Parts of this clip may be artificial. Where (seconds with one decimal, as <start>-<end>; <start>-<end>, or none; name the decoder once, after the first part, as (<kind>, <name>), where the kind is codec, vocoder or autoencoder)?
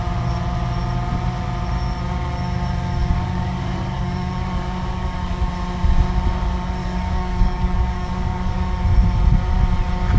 3.0-5.5 (codec, DAC); 6.8-8.8